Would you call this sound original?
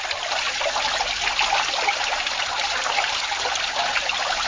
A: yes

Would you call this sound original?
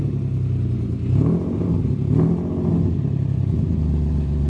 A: yes